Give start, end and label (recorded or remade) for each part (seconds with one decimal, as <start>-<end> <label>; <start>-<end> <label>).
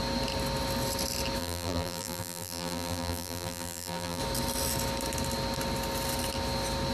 0.0-1.4 recorded; 1.4-4.2 remade; 4.2-6.9 recorded